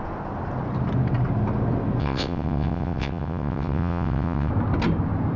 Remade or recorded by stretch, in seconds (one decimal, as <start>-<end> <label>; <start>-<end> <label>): 0.0-2.0 recorded; 2.0-4.5 remade; 4.5-5.4 recorded